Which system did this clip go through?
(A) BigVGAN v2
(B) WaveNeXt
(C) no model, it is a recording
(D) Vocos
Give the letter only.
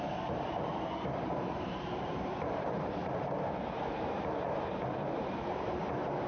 A